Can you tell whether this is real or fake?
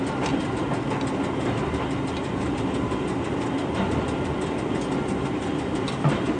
real